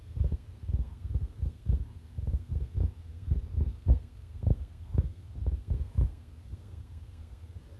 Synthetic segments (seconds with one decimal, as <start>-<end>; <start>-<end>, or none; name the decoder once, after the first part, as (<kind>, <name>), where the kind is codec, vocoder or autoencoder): 0.0-7.8 (codec, SNAC)

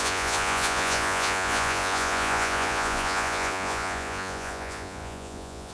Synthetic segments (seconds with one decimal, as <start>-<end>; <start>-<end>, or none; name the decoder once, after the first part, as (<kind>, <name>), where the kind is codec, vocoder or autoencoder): 0.0-5.7 (vocoder, Vocos)